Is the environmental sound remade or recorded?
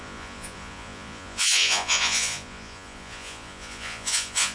remade